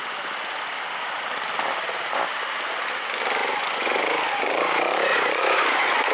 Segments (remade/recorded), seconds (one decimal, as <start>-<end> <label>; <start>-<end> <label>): 0.0-3.4 recorded; 3.4-4.0 remade; 4.0-5.1 recorded; 5.1-6.1 remade